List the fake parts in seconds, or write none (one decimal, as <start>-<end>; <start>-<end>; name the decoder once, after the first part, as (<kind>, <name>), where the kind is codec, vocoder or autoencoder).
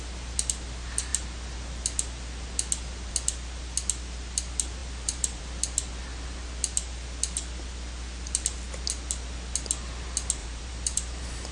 4.8-5.4 (vocoder, BigVGAN v2); 10.4-11.5